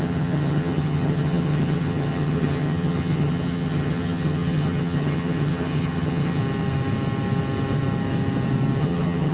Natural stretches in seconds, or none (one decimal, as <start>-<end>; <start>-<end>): 6.4-8.8